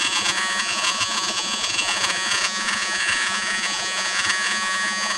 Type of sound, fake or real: fake